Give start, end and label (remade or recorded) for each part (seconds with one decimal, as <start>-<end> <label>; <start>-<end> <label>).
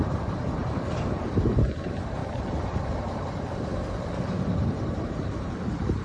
0.0-2.2 remade; 2.2-3.0 recorded; 3.0-6.0 remade